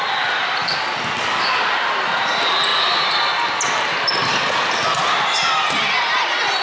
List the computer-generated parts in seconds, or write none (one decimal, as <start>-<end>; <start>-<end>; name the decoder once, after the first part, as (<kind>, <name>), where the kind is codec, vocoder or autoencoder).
none